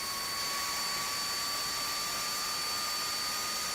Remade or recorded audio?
recorded